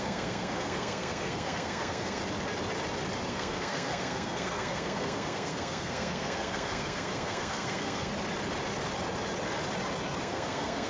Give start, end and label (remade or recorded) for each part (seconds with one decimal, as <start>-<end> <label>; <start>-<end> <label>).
0.0-2.2 remade; 2.2-3.3 recorded; 3.3-8.1 remade; 8.1-10.2 recorded; 10.2-10.9 remade